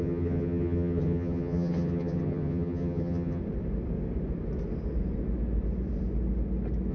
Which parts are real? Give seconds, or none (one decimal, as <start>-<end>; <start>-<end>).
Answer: 3.4-6.9